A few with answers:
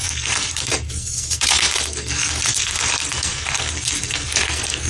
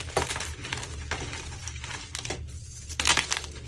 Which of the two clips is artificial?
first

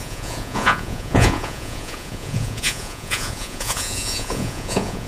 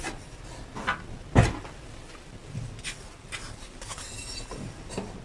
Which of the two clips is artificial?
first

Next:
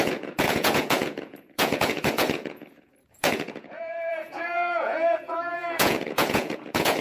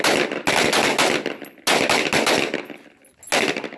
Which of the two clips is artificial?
first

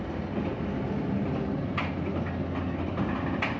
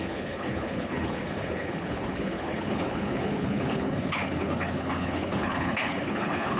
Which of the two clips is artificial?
second